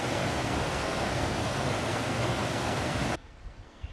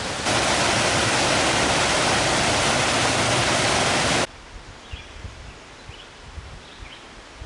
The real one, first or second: second